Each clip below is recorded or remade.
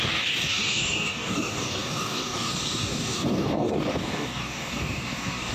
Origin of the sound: remade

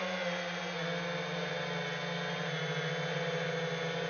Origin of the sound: recorded